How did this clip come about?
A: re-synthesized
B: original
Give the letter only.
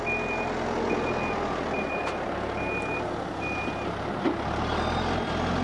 B